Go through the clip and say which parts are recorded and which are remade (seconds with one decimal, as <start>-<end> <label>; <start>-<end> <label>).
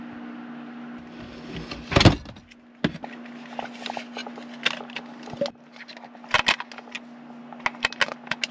0.0-8.5 recorded